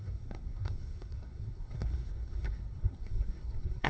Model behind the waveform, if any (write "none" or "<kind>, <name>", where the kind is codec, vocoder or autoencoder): codec, SNAC